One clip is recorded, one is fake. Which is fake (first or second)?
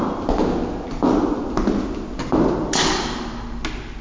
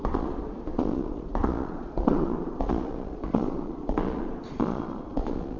second